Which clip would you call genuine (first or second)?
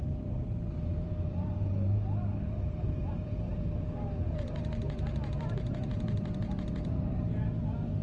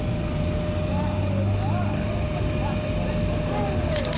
second